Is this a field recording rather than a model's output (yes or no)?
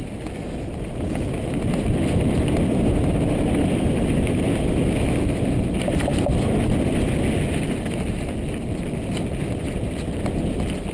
yes